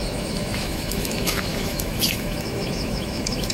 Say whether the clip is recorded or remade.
remade